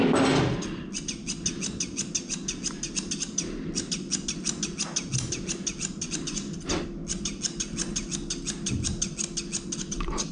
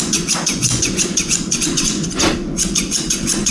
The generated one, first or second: second